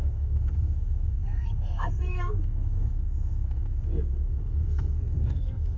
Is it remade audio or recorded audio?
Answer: remade